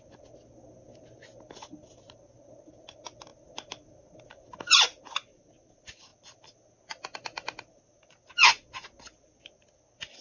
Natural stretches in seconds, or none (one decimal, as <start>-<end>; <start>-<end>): 0.0-10.2